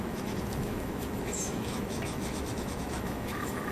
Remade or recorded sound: remade